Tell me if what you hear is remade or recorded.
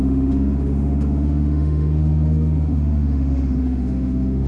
remade